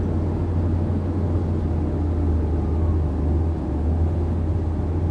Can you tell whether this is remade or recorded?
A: recorded